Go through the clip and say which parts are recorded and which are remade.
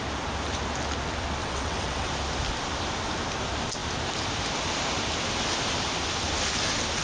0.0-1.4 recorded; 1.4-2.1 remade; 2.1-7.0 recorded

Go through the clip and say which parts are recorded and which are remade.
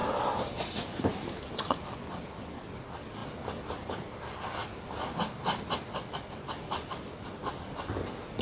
0.0-8.4 recorded